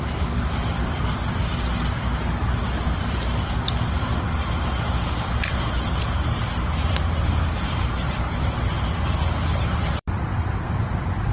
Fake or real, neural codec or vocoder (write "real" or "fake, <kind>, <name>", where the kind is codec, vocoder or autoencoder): fake, vocoder, BigVGAN v2